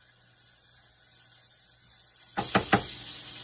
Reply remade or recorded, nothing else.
recorded